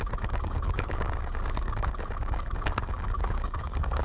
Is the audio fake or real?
fake